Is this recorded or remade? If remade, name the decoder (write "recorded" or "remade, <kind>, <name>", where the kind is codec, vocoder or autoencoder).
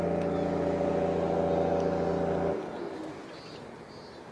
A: recorded